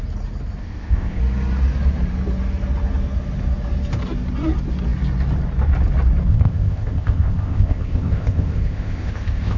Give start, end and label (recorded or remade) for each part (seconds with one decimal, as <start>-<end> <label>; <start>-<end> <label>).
0.0-0.6 recorded; 0.6-1.2 remade; 1.2-6.3 recorded; 6.3-9.6 remade